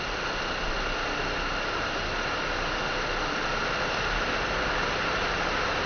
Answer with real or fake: real